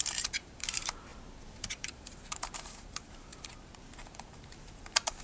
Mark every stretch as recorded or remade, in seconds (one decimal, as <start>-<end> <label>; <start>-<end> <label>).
0.0-1.1 remade; 1.1-1.7 recorded; 1.7-5.2 remade